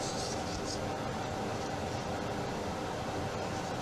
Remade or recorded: recorded